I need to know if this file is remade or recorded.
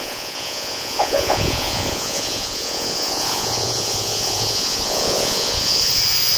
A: remade